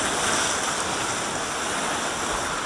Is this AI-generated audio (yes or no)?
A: no